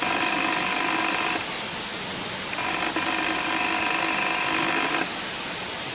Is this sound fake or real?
real